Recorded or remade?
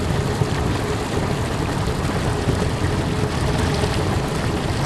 recorded